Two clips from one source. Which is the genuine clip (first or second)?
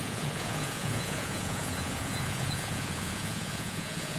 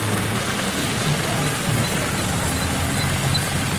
second